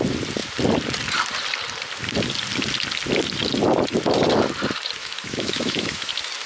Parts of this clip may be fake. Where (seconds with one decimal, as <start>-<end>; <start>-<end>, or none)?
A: 5.0-6.1